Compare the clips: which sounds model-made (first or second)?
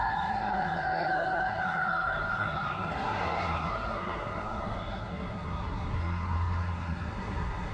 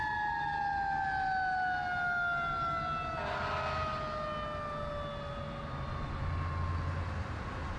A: first